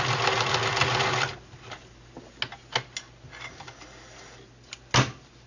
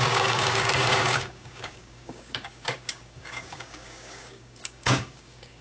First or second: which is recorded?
first